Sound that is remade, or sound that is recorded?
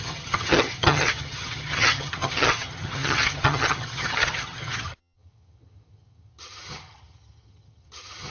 remade